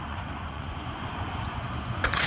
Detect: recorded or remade remade